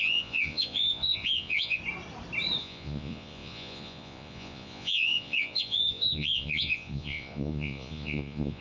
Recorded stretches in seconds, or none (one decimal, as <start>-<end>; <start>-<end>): 1.8-2.6